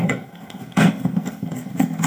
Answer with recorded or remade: remade